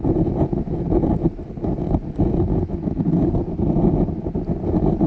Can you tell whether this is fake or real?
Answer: real